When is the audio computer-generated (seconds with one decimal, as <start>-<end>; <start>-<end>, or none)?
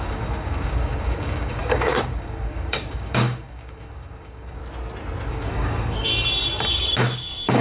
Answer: 0.0-4.6; 5.3-6.1; 6.7-7.6